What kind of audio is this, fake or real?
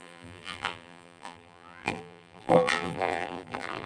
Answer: fake